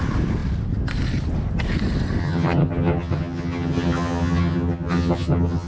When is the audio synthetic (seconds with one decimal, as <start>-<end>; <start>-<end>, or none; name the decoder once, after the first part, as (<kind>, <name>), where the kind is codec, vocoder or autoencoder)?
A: 2.2-5.7 (vocoder, HiFi-GAN)

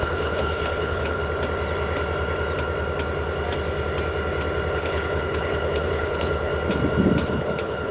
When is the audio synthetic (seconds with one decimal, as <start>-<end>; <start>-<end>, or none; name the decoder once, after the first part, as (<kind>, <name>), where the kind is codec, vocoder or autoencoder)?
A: 0.0-1.2 (codec, HILCodec); 4.7-6.5; 7.2-7.9

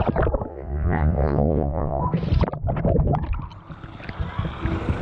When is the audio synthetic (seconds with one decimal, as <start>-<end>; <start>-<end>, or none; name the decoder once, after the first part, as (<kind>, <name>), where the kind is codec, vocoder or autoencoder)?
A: 0.5-2.0 (vocoder, WaveNeXt)

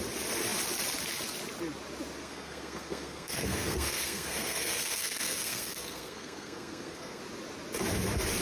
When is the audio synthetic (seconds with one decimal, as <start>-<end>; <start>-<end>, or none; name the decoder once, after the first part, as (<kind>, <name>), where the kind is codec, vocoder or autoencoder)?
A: 2.2-7.2 (codec, SNAC)

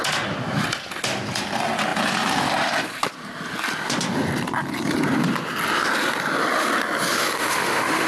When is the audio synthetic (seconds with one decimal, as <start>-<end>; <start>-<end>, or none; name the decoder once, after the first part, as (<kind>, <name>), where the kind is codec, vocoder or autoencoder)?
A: 7.1-8.1 (autoencoder, DAC-VAE)

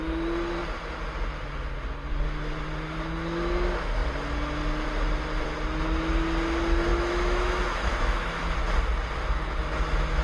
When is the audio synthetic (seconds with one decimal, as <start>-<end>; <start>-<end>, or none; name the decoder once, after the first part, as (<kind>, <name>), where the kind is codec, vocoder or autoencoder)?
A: 6.9-8.5 (autoencoder, DAC-VAE)

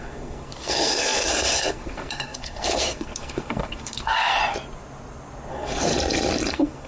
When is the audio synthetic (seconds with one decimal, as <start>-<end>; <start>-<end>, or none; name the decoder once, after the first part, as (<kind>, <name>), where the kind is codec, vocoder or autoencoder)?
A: 0.0-4.4 (codec, SNAC); 5.5-5.9; 6.5-6.9